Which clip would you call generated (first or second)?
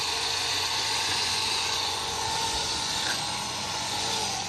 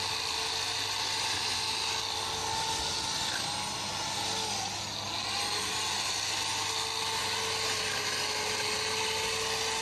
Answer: first